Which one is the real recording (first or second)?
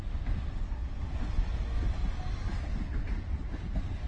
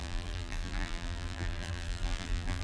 first